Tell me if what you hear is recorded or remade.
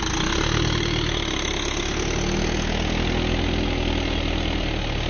recorded